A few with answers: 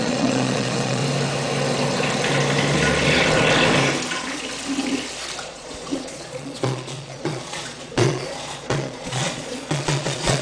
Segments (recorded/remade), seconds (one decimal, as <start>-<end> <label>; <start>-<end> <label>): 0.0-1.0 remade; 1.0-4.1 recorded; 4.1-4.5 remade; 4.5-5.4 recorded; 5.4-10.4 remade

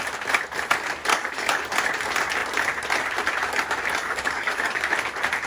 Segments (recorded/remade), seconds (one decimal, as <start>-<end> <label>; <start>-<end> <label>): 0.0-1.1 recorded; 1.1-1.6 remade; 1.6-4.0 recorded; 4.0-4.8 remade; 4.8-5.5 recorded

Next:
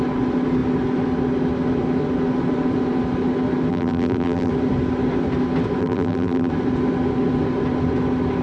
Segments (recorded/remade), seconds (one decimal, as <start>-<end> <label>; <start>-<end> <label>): 0.0-3.7 recorded; 3.7-4.5 remade; 4.5-5.8 recorded; 5.8-6.5 remade; 6.5-8.4 recorded

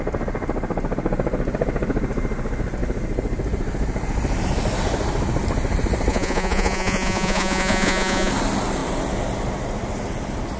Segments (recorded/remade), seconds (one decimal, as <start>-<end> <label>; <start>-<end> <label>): 0.0-6.1 recorded; 6.1-8.3 remade; 8.3-10.6 recorded

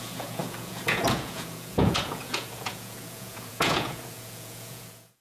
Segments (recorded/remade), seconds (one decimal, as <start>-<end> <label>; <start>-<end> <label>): 0.0-5.2 remade

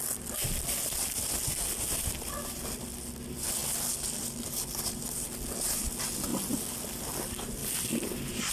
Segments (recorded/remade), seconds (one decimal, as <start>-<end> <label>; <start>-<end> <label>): 0.0-7.6 recorded; 7.6-8.5 remade

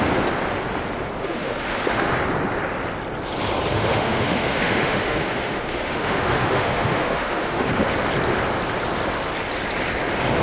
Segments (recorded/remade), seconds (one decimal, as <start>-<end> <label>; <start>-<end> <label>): 0.0-1.2 recorded; 1.2-2.1 remade; 2.1-3.7 recorded; 3.7-7.7 remade; 7.7-10.4 recorded

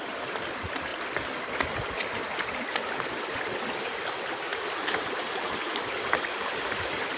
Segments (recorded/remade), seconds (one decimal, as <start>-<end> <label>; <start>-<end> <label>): 0.0-7.2 recorded